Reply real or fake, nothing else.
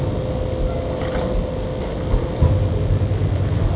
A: real